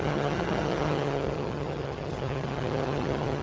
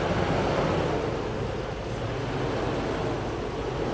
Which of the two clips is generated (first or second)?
first